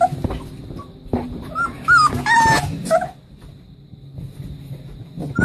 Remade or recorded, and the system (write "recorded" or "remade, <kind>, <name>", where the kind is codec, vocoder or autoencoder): recorded